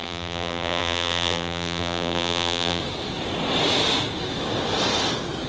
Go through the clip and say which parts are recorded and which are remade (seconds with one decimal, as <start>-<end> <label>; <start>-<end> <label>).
0.0-2.8 remade; 2.8-5.5 recorded